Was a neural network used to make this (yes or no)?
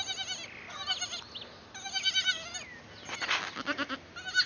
no